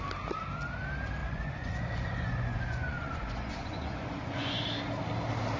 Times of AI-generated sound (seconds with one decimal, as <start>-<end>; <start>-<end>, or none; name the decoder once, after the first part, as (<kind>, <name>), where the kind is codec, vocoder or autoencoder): 1.2-4.6 (vocoder, Vocos)

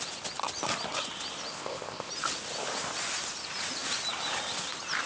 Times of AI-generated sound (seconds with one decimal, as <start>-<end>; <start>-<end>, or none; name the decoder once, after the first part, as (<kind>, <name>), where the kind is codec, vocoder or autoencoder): 1.5-2.1 (codec, ZipCodec)